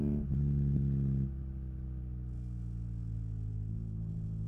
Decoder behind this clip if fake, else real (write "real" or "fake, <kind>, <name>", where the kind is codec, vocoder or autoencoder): real